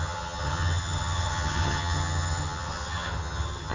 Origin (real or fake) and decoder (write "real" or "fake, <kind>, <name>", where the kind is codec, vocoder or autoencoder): fake, vocoder, HiFi-GAN